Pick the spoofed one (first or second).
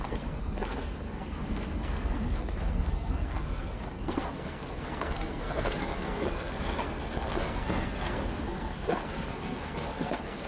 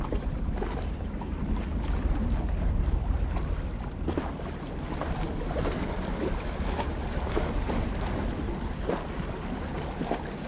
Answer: first